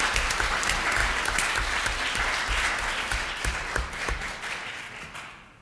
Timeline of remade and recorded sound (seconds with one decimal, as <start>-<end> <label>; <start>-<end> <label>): 0.0-5.6 recorded